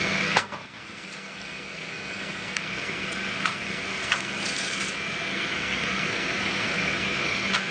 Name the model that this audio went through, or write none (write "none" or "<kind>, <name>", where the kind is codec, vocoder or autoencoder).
codec, SNAC